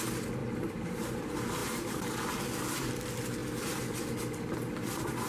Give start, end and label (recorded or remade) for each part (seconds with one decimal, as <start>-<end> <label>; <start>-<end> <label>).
0.0-0.4 recorded; 0.4-1.2 remade; 1.2-1.6 recorded; 1.6-2.3 remade; 2.3-5.3 recorded